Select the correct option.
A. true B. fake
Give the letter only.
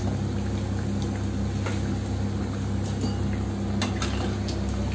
A